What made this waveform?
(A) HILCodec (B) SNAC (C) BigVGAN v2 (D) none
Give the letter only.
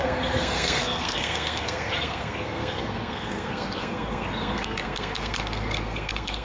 B